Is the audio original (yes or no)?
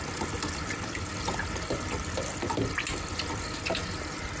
yes